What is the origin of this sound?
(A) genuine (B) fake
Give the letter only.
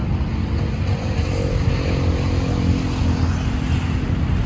A